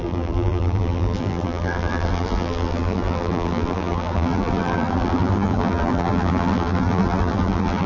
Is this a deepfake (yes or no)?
yes